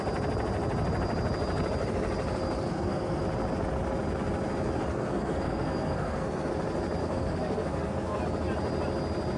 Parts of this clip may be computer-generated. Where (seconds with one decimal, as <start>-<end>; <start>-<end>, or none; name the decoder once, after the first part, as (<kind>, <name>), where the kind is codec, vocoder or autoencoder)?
2.7-3.2 (codec, SNAC); 4.9-6.5; 7.0-8.2